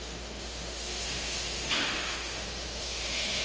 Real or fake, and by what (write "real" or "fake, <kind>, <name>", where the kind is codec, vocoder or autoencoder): fake, autoencoder, DAC-VAE